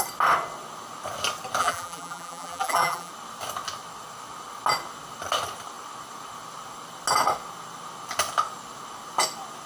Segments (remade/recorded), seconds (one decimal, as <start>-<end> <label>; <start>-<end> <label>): 0.0-1.6 recorded; 1.6-3.1 remade; 3.1-9.7 recorded